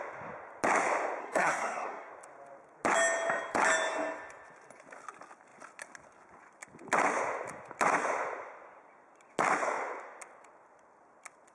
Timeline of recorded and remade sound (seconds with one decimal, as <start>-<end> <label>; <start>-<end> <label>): 0.0-1.2 recorded; 1.2-2.1 remade; 2.1-11.5 recorded

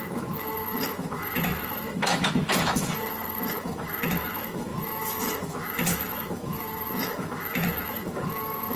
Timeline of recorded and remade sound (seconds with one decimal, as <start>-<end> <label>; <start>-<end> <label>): 0.0-8.8 remade

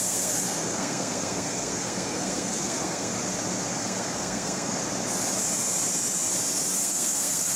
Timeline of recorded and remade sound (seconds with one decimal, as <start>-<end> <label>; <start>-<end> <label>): 0.0-3.1 remade; 3.1-3.7 recorded; 3.7-4.8 remade; 4.8-6.7 recorded; 6.7-7.6 remade

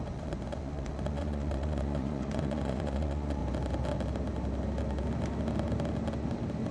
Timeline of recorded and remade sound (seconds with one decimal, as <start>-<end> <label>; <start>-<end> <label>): 0.0-3.4 remade; 3.4-6.7 recorded

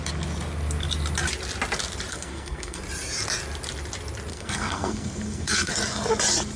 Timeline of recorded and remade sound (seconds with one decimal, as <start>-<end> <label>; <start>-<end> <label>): 0.0-2.1 recorded; 2.1-2.8 remade; 2.8-4.3 recorded; 4.3-5.7 remade; 5.7-6.6 recorded

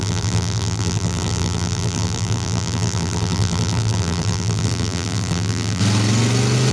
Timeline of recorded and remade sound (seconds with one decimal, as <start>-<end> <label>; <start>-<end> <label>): 0.0-5.8 remade; 5.8-6.7 recorded

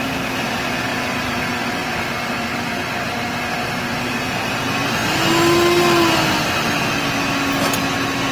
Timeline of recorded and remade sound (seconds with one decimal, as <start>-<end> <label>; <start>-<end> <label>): 0.0-0.9 recorded; 0.9-3.4 remade; 3.4-8.3 recorded

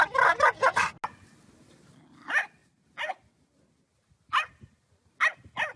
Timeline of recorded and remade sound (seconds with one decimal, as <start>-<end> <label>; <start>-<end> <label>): 0.0-5.8 recorded